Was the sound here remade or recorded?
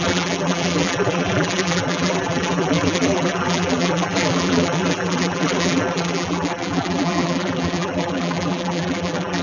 remade